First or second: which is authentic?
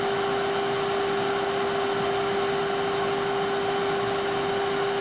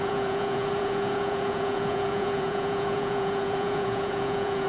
first